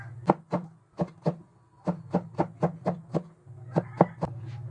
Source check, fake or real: real